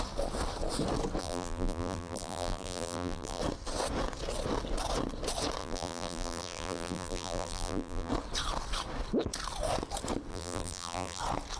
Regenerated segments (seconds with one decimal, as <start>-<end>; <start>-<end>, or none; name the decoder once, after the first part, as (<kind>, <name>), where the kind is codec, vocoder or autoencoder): 1.2-3.4 (vocoder, BigVGAN v2); 5.6-8.1; 10.3-11.2